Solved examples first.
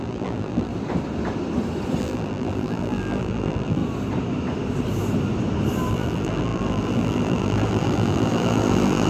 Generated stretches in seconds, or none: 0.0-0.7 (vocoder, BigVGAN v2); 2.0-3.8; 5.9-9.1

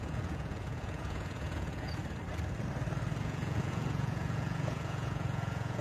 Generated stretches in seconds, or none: 0.0-2.0 (vocoder, Vocos); 3.2-5.8

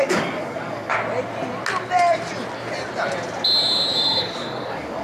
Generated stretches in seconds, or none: 0.0-0.9 (codec, DAC); 3.9-5.0